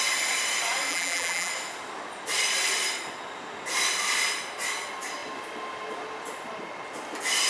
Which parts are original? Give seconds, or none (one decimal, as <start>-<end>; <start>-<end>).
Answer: 0.0-0.9; 1.5-7.5